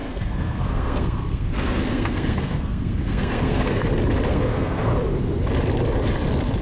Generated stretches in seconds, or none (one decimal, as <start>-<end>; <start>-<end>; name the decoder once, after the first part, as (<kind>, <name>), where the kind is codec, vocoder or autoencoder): 0.0-3.8 (codec, SNAC); 4.3-4.9